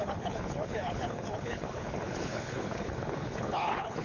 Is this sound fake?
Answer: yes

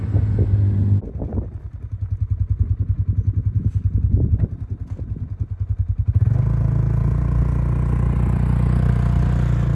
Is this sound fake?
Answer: no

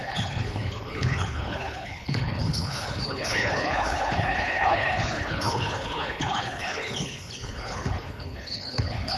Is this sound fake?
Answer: yes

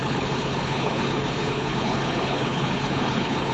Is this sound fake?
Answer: yes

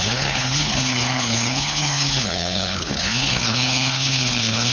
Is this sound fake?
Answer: yes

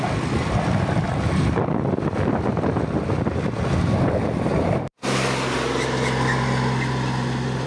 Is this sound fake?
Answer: no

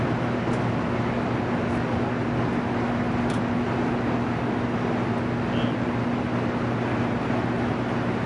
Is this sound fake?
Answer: no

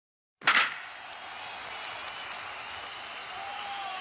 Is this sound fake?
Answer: no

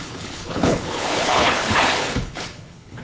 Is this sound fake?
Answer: yes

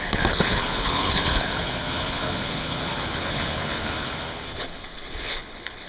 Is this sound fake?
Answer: yes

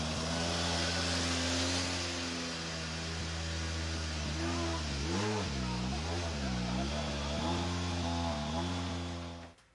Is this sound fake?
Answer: no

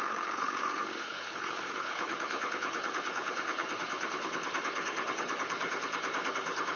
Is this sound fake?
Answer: yes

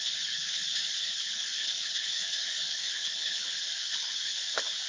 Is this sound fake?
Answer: yes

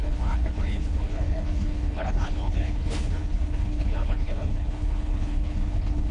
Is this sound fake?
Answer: yes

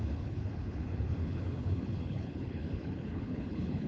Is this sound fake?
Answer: yes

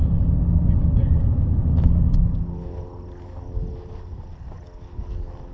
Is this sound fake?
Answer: no